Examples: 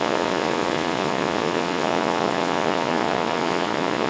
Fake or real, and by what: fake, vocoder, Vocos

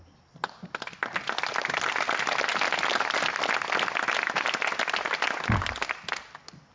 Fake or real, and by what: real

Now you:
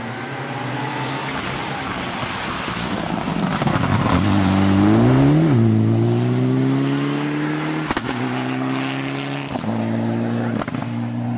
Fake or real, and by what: real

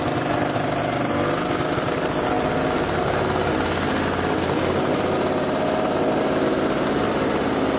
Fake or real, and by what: real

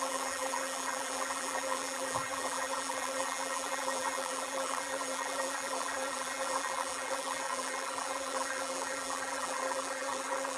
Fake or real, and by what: fake, vocoder, BigVGAN v2